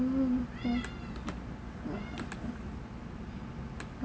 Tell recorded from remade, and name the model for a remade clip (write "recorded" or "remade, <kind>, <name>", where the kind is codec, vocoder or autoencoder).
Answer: recorded